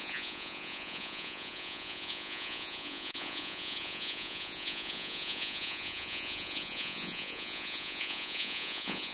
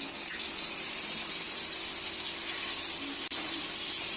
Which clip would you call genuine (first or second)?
second